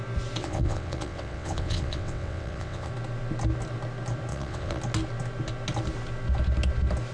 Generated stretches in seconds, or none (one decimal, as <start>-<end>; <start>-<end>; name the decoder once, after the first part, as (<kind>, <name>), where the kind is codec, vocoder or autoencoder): 0.4-2.9 (vocoder, WaveNeXt); 4.3-4.8